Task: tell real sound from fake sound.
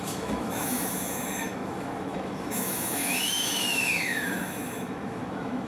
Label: fake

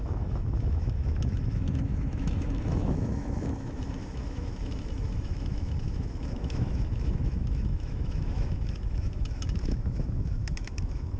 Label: fake